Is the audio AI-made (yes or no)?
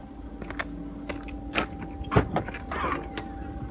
no